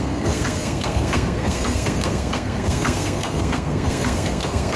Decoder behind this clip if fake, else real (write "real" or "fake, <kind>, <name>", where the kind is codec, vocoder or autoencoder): fake, codec, SNAC